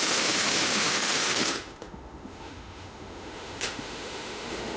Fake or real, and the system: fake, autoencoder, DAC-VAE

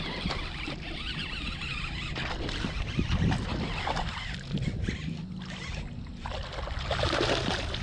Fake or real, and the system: real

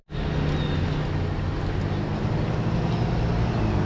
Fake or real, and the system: real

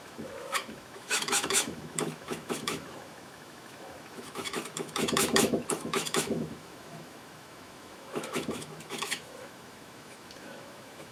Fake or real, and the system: fake, autoencoder, DAC-VAE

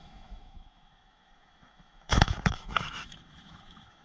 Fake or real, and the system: fake, autoencoder, DAC-VAE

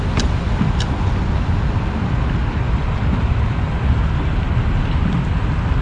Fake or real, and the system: real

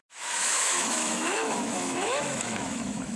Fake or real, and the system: fake, autoencoder, DAC-VAE